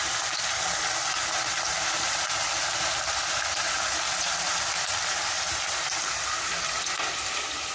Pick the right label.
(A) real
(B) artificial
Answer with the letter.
A